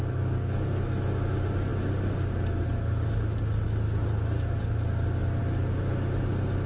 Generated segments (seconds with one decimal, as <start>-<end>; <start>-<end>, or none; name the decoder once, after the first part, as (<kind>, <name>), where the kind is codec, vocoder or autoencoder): none